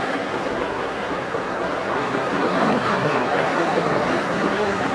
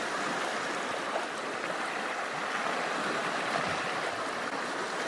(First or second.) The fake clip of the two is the first